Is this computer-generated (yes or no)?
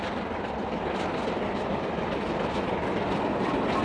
no